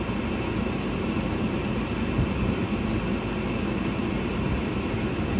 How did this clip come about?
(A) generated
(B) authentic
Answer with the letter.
B